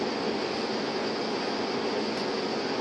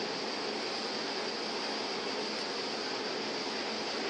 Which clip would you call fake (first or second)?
first